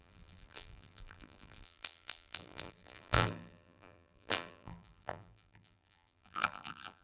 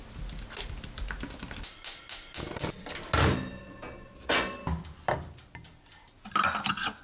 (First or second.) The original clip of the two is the second